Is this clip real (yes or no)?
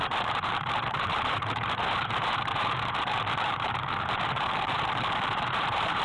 no